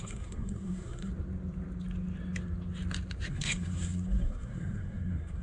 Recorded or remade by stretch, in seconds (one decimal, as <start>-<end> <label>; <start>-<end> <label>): 0.0-1.1 remade; 1.1-3.3 recorded; 3.3-5.4 remade

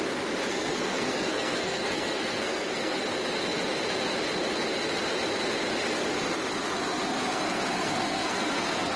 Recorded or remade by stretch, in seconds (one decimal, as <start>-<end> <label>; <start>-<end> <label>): 0.0-0.5 recorded; 0.5-3.0 remade; 3.0-7.3 recorded; 7.3-9.0 remade